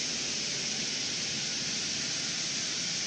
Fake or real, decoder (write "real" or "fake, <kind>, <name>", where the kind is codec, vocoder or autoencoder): real